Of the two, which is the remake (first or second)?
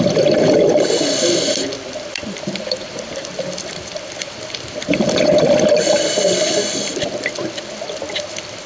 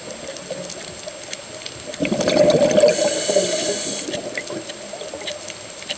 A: first